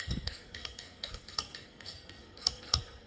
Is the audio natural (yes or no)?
no